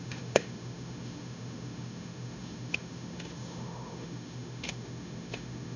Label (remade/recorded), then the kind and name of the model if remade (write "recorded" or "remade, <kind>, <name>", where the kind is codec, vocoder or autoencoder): remade, autoencoder, DAC-VAE